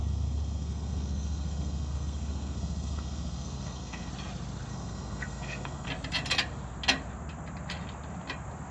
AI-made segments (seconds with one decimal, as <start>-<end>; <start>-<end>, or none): 0.0-4.1; 4.7-5.9